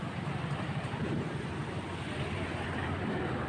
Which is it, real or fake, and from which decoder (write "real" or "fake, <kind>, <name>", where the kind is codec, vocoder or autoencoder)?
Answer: fake, vocoder, BigVGAN v2